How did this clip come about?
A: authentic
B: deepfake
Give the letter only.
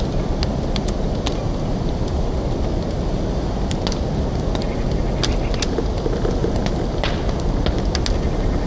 A